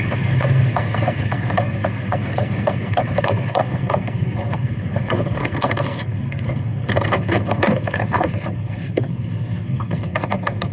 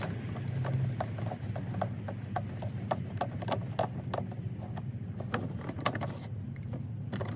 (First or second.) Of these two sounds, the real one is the second